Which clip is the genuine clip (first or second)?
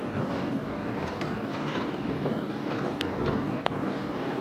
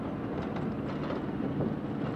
second